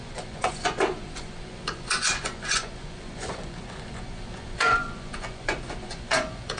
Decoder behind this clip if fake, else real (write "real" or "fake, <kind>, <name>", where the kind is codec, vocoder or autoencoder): fake, vocoder, Vocos